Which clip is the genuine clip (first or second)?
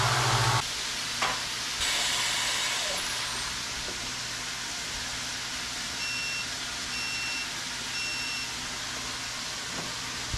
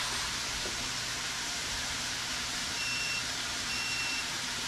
first